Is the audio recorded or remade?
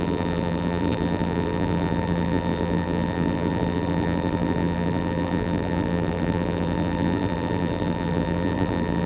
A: remade